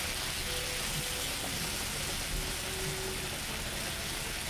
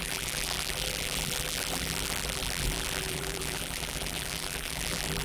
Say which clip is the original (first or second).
first